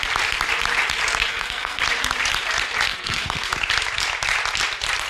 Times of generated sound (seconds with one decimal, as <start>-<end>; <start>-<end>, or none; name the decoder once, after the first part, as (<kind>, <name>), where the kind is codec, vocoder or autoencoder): 1.3-1.8 (codec, SNAC); 2.9-3.5